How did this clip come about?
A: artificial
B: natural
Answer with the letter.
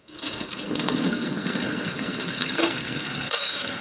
A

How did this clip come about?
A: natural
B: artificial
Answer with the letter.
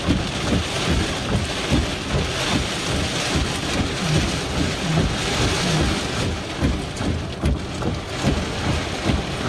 A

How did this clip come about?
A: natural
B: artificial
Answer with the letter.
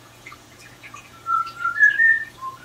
B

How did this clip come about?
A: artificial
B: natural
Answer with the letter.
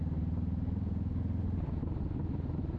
B